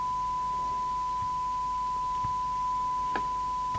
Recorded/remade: recorded